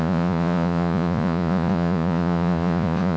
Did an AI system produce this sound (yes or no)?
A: yes